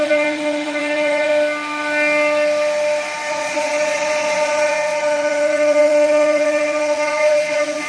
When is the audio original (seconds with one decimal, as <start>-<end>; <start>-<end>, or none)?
1.3-3.3